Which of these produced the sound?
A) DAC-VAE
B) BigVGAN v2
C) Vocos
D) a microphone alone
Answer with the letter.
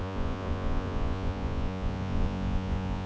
C